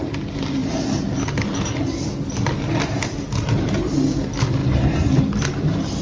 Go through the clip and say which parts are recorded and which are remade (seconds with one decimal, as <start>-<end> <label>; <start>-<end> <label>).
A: 0.0-6.0 recorded